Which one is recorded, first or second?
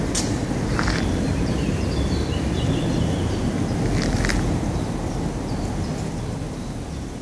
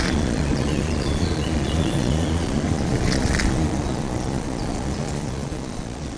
first